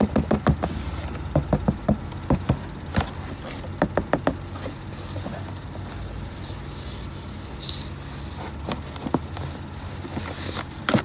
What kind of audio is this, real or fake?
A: real